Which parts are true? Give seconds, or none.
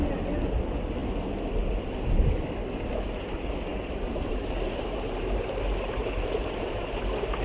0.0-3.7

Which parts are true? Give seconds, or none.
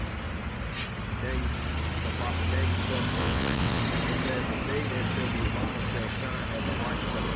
0.0-3.2; 3.8-7.4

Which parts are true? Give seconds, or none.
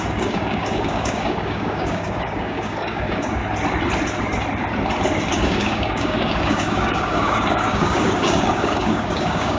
3.4-5.3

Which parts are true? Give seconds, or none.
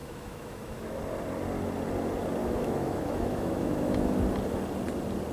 1.0-2.4; 4.1-5.3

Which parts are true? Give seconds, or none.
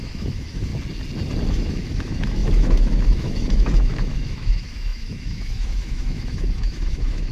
0.7-1.5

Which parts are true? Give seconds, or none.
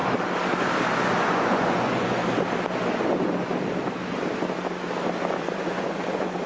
0.0-1.2; 2.2-5.4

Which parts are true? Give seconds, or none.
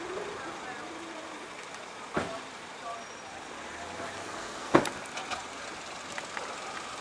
0.0-4.2; 4.8-7.0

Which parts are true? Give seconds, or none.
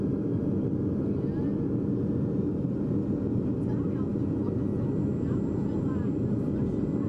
0.0-7.1